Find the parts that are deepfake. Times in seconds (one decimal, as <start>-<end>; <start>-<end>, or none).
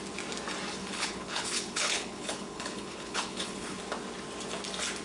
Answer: 0.8-3.8